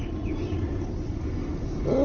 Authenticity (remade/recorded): recorded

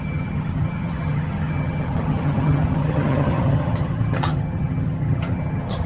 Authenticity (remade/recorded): remade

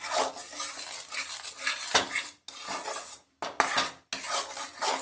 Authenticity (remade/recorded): recorded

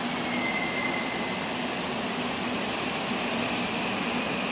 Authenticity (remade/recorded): recorded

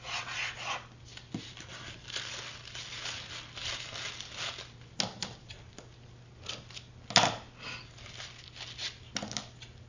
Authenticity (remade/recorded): recorded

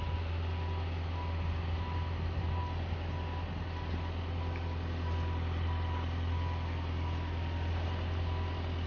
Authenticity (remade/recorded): recorded